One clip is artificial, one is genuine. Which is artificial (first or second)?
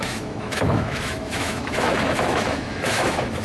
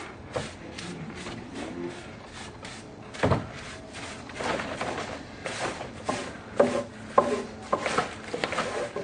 first